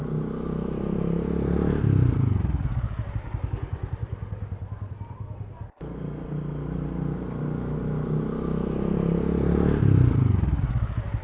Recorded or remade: recorded